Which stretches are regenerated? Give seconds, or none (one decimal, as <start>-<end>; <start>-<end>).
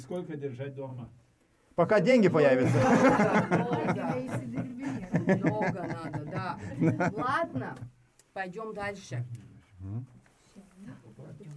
0.9-2.4